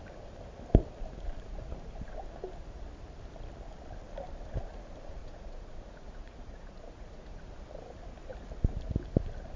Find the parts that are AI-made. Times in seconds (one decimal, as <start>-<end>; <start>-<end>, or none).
5.2-7.4